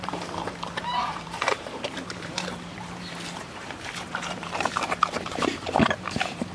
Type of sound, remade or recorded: remade